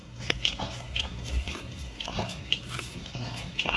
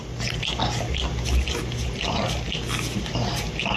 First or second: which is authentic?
second